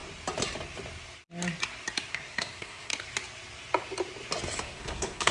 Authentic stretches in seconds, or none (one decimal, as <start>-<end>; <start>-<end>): 0.0-2.1; 2.9-4.6